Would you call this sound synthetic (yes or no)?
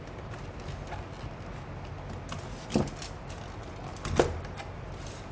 no